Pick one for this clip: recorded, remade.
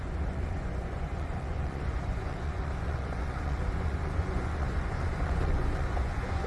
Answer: remade